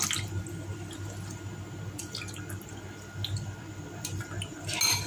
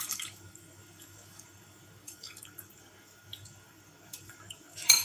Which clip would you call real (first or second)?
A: first